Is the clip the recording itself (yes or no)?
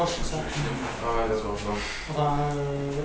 yes